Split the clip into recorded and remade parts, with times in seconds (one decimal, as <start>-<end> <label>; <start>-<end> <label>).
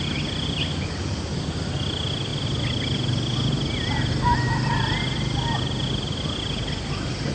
0.0-7.3 recorded